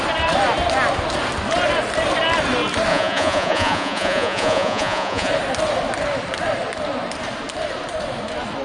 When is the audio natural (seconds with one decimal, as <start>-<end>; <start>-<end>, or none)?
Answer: 0.0-2.9; 5.3-8.6